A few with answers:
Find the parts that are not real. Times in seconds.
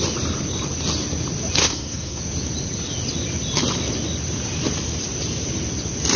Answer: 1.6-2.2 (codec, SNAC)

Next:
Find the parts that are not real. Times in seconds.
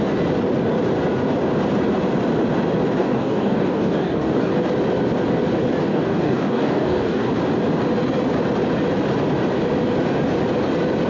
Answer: 3.0-4.5 (codec, DAC); 5.9-7.3